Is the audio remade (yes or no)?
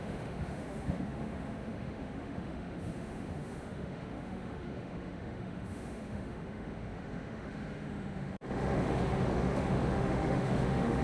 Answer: yes